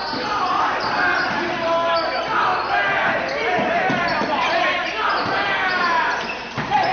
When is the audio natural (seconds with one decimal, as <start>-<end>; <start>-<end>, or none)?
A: 1.3-2.5; 5.5-6.9